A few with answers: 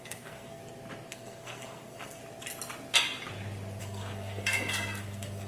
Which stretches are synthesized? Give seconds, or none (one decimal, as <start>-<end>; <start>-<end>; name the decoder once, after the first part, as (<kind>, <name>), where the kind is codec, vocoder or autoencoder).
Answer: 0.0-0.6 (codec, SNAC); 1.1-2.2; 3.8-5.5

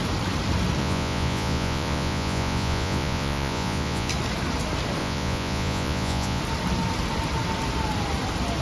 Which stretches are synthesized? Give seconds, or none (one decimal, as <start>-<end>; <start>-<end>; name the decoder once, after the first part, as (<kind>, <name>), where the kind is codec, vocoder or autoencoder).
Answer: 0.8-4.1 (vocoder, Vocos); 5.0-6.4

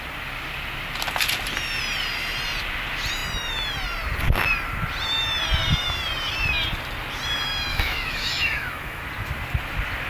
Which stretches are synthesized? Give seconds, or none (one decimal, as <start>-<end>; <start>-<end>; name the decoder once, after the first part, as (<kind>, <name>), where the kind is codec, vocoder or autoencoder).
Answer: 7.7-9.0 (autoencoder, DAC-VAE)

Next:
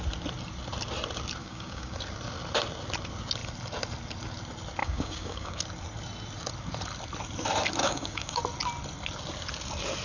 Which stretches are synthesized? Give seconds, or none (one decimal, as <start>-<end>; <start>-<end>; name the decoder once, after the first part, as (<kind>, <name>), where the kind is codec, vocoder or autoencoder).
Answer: 1.4-2.0 (codec, DAC); 4.8-5.6; 7.8-8.4

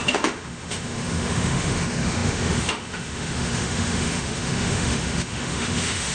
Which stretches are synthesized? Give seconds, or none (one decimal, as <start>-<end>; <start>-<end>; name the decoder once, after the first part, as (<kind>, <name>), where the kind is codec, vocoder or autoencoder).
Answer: 0.0-6.1 (autoencoder, DAC-VAE)

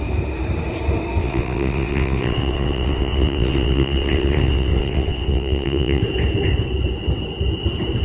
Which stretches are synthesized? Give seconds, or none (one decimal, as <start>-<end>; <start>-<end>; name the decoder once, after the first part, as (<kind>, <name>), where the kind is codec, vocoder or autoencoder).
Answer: 1.2-6.0 (vocoder, WaveNeXt)

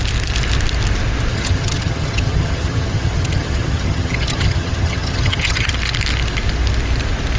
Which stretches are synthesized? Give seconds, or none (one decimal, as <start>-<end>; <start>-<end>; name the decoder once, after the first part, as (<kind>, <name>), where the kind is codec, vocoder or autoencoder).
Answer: 1.3-5.7 (vocoder, HiFi-GAN)